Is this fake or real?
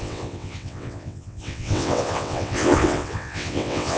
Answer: fake